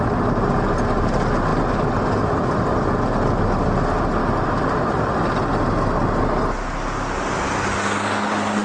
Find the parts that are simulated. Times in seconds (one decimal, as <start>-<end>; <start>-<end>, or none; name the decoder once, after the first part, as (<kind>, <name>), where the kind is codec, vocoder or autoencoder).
none